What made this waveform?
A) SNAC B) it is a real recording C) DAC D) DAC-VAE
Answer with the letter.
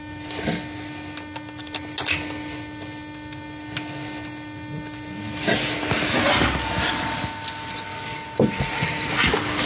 B